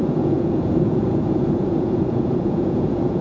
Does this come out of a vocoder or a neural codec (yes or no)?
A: yes